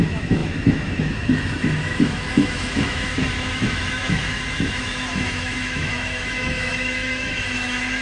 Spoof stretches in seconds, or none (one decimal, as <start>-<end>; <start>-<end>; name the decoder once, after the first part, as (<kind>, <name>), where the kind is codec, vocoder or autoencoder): 0.0-8.0 (autoencoder, DAC-VAE)